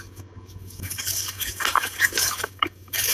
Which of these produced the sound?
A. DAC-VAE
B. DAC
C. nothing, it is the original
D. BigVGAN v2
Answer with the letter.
B